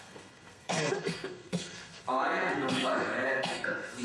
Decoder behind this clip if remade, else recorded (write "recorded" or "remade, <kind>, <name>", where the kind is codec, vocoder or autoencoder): remade, codec, SNAC